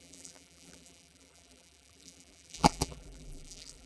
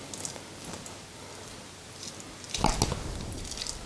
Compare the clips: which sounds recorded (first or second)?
second